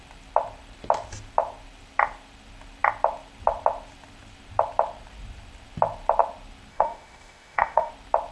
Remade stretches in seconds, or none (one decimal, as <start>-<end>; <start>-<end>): 6.7-7.9